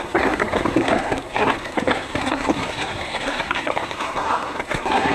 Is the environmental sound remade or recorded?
remade